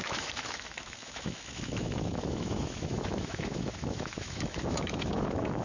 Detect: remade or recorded remade